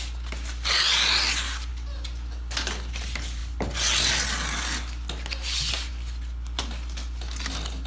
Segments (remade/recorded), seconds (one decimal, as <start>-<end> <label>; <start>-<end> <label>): 0.0-7.9 recorded